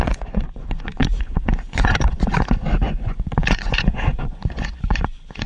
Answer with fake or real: fake